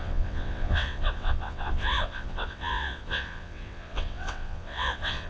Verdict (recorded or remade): remade